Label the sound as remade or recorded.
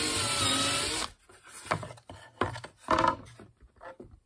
recorded